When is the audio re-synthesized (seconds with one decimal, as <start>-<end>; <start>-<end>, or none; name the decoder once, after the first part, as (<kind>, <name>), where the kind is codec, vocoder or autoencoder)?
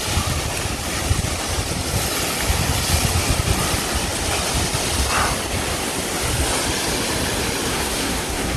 7.7-8.6 (codec, SNAC)